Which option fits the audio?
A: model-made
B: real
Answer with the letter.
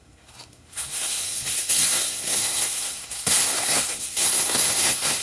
A